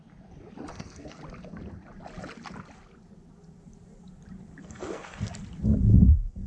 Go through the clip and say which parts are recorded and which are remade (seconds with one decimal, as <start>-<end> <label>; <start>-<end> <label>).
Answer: 0.0-0.7 recorded; 0.7-1.2 remade; 1.2-4.6 recorded; 4.6-5.3 remade; 5.3-5.9 recorded; 5.9-6.5 remade

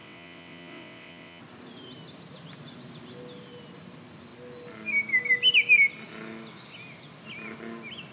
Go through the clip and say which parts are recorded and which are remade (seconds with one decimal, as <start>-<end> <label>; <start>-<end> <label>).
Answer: 0.0-1.4 remade; 1.4-8.1 recorded

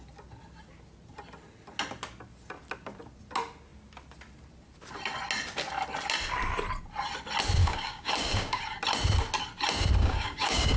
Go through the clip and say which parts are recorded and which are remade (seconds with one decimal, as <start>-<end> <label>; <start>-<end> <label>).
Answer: 0.0-7.6 recorded; 7.6-8.6 remade; 8.6-10.0 recorded; 10.0-10.8 remade

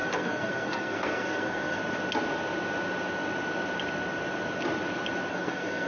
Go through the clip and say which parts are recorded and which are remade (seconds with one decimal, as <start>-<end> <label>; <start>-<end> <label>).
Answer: 0.0-1.8 remade; 1.8-5.3 recorded; 5.3-5.9 remade